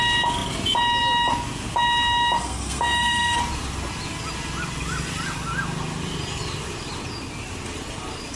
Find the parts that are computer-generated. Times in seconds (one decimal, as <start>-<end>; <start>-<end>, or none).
2.4-3.4